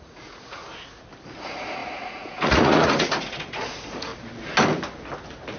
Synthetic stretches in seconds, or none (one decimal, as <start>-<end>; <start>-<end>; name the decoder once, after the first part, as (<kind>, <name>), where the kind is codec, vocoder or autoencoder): 0.0-0.6 (vocoder, Vocos); 1.3-4.1